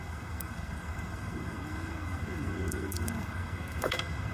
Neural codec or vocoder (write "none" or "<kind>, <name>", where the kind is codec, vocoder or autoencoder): codec, SNAC